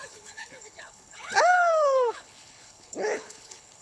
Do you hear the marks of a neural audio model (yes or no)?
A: yes